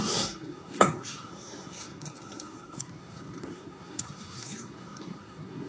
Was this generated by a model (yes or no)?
yes